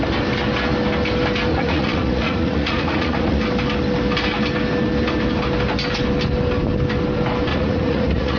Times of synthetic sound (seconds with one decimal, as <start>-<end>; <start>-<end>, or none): 1.5-3.4; 7.5-8.4

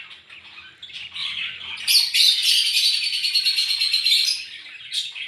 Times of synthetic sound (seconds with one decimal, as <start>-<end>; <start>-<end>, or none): 2.4-3.7

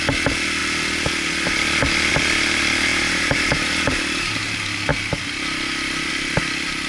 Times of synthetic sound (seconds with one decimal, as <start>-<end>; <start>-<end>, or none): 2.9-4.4

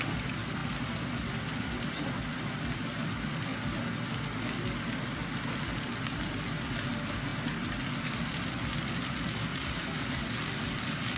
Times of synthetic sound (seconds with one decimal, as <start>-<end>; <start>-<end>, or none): 9.5-10.2

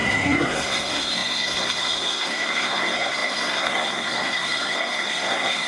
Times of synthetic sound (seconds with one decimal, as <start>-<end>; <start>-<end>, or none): 0.0-5.7

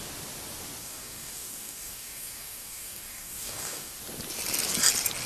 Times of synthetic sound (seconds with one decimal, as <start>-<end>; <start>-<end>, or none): 0.8-4.0